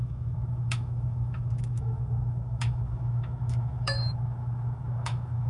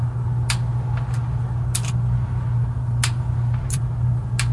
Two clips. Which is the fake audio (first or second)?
first